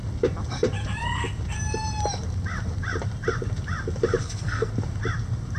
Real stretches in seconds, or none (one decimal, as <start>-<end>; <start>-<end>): 0.0-4.2; 4.7-5.6